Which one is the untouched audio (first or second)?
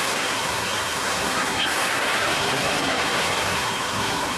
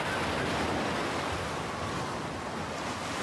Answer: second